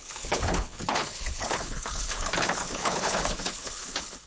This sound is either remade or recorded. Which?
remade